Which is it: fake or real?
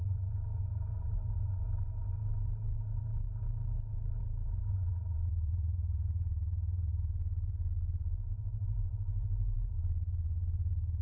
fake